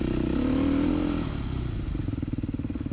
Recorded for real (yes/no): yes